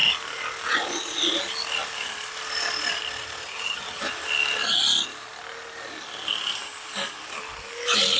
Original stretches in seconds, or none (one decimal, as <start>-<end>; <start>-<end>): 0.0-3.4; 4.0-8.2